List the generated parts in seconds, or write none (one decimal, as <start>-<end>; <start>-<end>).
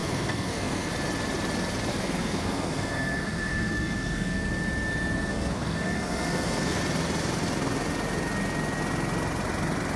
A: 0.0-0.9; 1.9-4.5; 5.3-6.8